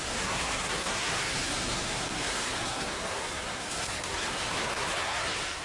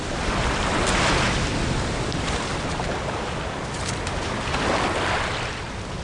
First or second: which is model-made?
first